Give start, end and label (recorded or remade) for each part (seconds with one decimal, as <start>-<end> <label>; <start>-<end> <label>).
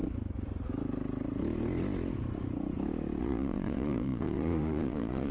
0.0-3.2 recorded; 3.2-5.3 remade